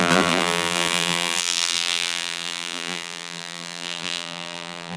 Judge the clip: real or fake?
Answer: fake